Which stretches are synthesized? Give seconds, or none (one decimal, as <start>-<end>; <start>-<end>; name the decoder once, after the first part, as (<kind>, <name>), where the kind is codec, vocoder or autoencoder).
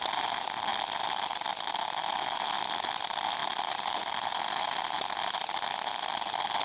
none